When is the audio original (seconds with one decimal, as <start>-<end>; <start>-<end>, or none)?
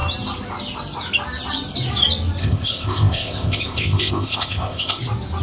0.0-2.4; 5.0-5.4